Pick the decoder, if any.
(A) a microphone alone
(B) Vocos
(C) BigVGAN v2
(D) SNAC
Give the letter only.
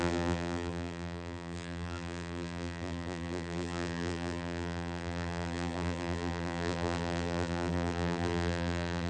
C